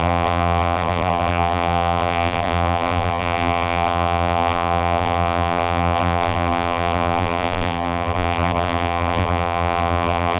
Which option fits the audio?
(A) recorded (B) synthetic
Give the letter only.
B